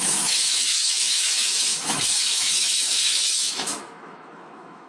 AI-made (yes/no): yes